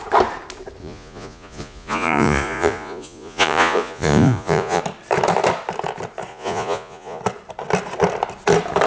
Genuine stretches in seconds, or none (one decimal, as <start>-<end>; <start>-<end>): 0.0-0.8; 4.8-6.3; 7.2-8.9